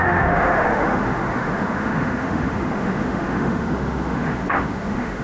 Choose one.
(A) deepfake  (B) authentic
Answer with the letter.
A